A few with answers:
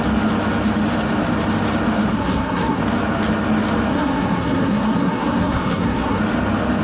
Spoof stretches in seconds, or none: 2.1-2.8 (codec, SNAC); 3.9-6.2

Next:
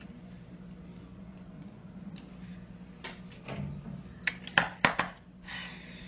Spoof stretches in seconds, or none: 1.0-1.9 (vocoder, Vocos)

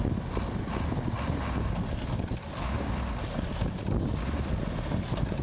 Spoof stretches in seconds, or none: none

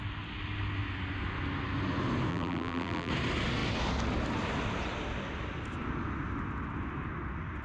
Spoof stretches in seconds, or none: 2.3-3.1 (vocoder, BigVGAN v2)

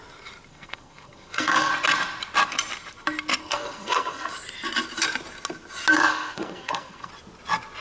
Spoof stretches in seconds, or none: 0.5-1.7 (codec, SNAC); 3.4-4.3; 5.9-7.1